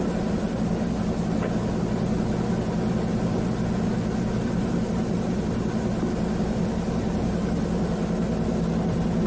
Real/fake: real